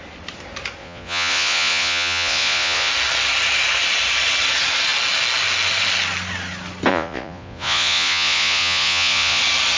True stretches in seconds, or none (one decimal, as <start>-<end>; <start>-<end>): 0.0-0.8; 2.9-6.9; 9.4-9.8